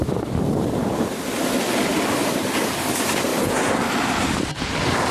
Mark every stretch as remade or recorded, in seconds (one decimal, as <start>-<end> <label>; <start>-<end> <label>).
0.0-1.9 recorded; 1.9-2.5 remade; 2.5-5.1 recorded